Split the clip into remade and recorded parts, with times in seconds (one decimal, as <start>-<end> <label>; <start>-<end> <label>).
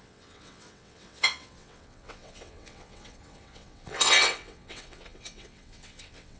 0.0-6.4 remade